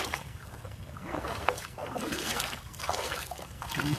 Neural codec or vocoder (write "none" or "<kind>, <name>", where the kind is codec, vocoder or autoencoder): codec, SNAC